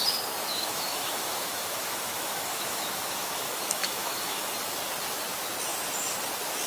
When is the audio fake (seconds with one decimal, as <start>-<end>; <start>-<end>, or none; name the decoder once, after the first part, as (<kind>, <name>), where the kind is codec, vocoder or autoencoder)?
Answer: 0.5-4.5 (autoencoder, DAC-VAE)